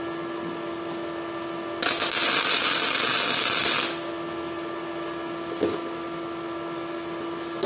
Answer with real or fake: real